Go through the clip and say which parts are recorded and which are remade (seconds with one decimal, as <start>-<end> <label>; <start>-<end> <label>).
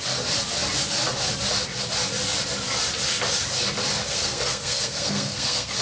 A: 0.0-4.0 recorded; 4.0-5.8 remade